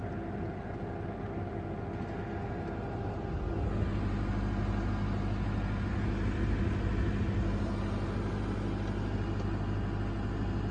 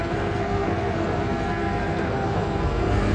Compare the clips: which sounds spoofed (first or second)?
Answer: second